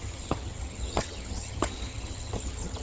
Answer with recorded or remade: remade